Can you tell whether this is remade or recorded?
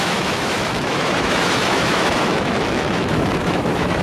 remade